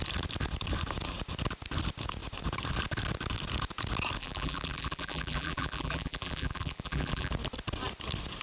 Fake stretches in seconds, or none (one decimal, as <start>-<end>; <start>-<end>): 4.2-7.3

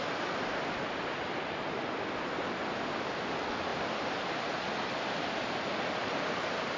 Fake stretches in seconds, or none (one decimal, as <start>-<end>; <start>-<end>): none

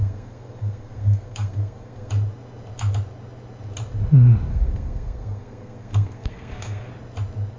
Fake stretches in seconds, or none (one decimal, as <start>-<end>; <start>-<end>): 0.0-2.1; 4.5-6.9

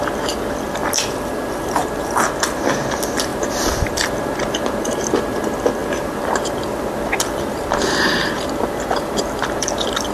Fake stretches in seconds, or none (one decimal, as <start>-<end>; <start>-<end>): 0.0-10.1

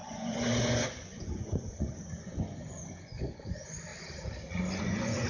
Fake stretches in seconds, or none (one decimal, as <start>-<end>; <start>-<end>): 0.0-3.9; 4.8-5.3

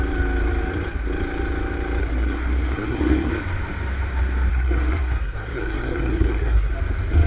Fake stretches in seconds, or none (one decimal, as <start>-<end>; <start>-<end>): 2.0-3.3; 4.5-6.7

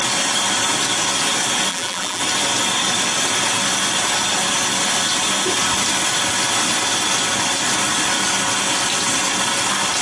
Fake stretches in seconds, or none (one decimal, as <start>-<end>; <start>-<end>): 1.7-2.2